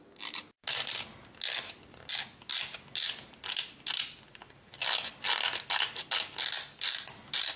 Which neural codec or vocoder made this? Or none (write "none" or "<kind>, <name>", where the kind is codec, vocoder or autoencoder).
none